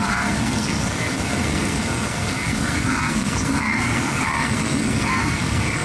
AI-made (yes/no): yes